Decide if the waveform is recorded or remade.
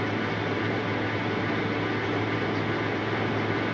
recorded